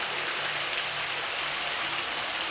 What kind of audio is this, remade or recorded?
recorded